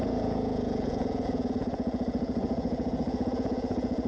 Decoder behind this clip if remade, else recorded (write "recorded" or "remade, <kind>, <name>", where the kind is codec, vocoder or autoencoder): remade, vocoder, Vocos